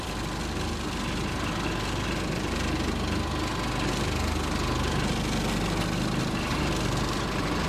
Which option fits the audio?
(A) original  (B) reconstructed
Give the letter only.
A